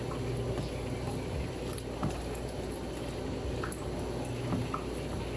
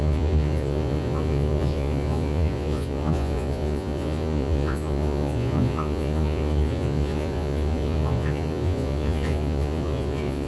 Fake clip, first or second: second